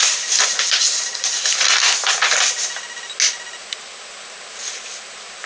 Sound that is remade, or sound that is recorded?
recorded